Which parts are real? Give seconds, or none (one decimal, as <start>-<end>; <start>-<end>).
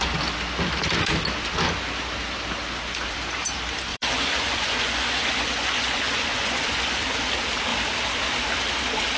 0.0-3.9; 7.0-9.2